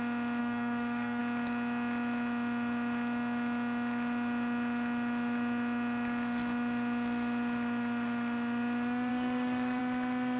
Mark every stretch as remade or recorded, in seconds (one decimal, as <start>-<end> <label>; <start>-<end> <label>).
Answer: 0.0-0.4 recorded; 0.4-1.2 remade; 1.2-9.1 recorded; 9.1-9.8 remade; 9.8-10.4 recorded

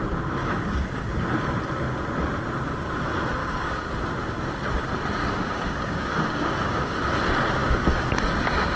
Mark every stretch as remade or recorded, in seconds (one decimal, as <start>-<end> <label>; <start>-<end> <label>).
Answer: 0.0-0.4 recorded; 0.4-1.1 remade; 1.1-3.4 recorded; 3.4-3.9 remade; 3.9-5.2 recorded; 5.2-7.0 remade; 7.0-7.6 recorded; 7.6-8.1 remade; 8.1-8.8 recorded

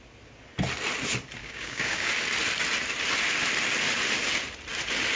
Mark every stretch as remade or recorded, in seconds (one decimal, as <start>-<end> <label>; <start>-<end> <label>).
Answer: 0.0-1.4 recorded; 1.4-2.1 remade; 2.1-5.2 recorded

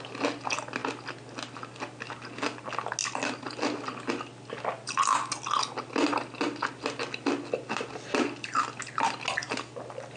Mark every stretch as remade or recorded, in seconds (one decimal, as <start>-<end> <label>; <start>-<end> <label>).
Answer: 0.0-10.2 recorded

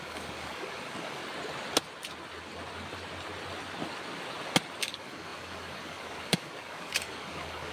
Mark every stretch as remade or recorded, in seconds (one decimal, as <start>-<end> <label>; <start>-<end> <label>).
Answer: 0.0-1.2 remade; 1.2-4.8 recorded; 4.8-7.7 remade

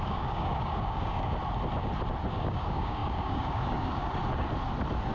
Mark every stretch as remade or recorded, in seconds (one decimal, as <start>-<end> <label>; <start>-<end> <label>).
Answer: 0.0-1.4 remade; 1.4-2.3 recorded; 2.3-4.2 remade; 4.2-5.1 recorded

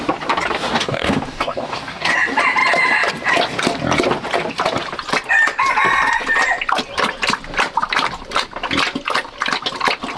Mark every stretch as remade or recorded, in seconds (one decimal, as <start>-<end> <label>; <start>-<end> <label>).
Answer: 0.0-0.7 recorded; 0.7-2.1 remade; 2.1-10.2 recorded